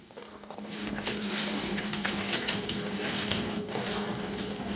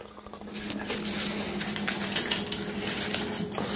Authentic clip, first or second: second